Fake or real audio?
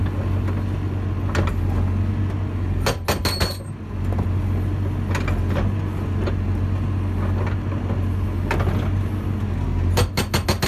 real